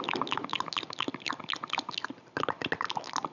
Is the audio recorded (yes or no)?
yes